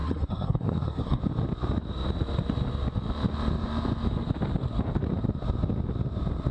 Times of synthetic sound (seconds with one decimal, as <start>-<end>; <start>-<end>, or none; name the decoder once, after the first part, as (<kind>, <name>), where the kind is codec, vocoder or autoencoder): 0.0-1.2 (codec, SNAC)